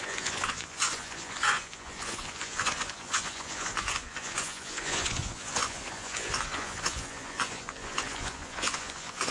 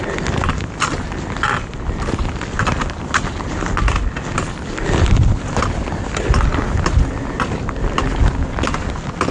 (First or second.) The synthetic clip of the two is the first